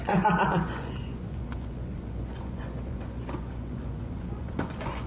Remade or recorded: remade